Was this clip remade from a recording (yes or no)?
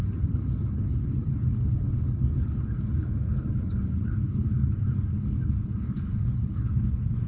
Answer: yes